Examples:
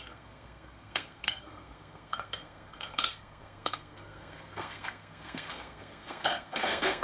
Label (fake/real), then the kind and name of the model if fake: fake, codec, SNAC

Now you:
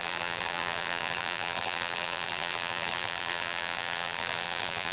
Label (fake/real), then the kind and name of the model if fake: fake, vocoder, BigVGAN v2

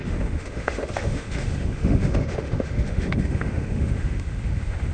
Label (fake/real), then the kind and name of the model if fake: fake, autoencoder, DAC-VAE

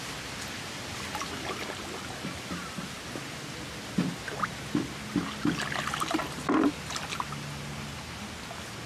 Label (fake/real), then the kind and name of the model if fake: real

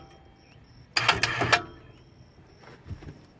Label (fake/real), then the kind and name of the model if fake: real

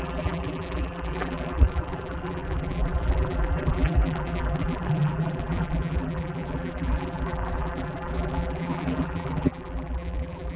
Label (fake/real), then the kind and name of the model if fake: fake, vocoder, BigVGAN v2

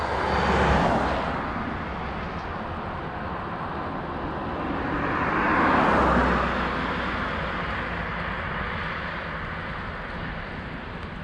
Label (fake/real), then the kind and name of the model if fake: real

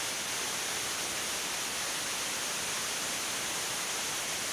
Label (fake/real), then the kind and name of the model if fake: real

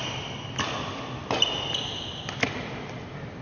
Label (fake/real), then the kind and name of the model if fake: real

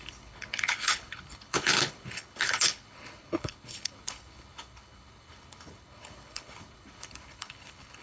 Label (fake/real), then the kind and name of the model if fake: fake, codec, HILCodec